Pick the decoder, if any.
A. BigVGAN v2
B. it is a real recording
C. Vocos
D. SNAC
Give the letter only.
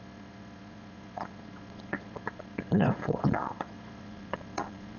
C